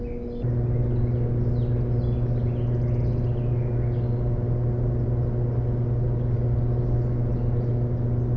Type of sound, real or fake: real